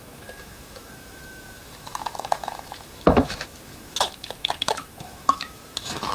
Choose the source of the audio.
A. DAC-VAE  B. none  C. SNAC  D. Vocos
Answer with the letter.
A